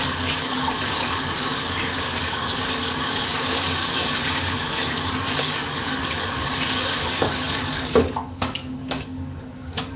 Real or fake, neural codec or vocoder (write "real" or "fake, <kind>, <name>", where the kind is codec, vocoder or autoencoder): fake, codec, DAC